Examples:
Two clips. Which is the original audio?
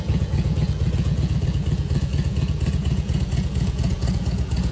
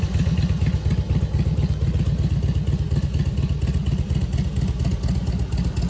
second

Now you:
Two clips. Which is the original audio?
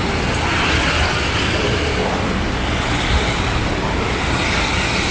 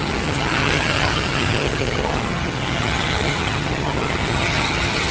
first